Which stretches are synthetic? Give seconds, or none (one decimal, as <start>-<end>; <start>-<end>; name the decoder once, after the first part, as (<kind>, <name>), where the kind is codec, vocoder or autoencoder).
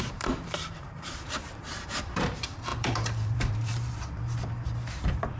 0.0-5.4 (vocoder, BigVGAN v2)